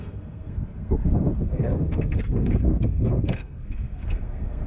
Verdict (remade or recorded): remade